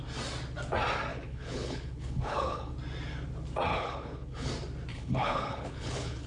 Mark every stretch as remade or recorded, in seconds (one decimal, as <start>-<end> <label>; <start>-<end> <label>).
0.0-1.1 recorded; 1.1-2.7 remade; 2.7-3.7 recorded; 3.7-4.5 remade; 4.5-4.9 recorded; 4.9-6.3 remade